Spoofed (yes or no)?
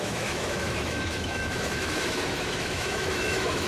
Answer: yes